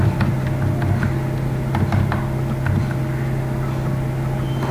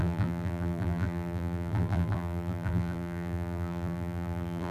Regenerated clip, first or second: second